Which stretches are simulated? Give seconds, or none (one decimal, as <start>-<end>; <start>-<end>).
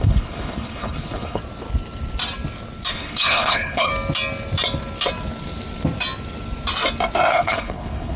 0.0-1.4; 2.9-3.9; 7.3-8.2